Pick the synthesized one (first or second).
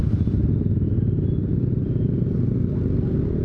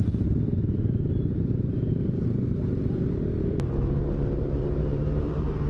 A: second